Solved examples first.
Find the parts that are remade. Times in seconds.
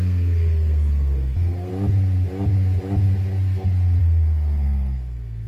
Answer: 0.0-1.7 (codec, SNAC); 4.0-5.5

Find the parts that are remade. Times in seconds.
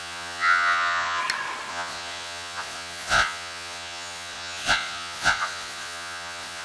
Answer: 0.0-1.2 (vocoder, Vocos); 1.7-6.6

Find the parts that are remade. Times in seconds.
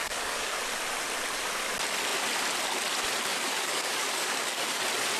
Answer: 0.0-0.6 (codec, DAC); 3.3-4.8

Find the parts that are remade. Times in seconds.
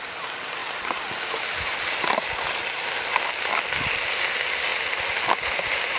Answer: none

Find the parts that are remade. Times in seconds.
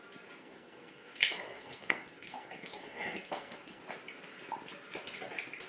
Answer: 0.4-3.8 (codec, SNAC)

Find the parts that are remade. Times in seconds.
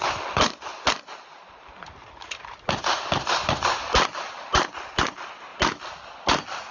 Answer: none